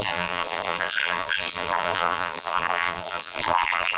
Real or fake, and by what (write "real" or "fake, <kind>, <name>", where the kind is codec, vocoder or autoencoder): fake, vocoder, BigVGAN v2